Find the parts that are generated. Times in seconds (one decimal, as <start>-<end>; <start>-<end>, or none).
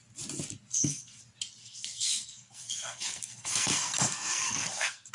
0.7-1.2; 1.6-5.1